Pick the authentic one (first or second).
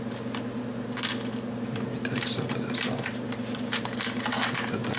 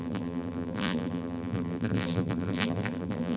first